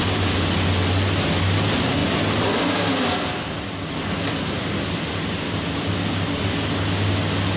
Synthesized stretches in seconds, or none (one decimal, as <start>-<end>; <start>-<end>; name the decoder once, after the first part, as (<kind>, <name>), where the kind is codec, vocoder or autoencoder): none